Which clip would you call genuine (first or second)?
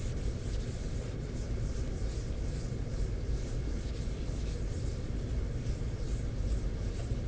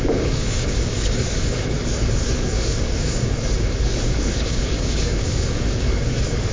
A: first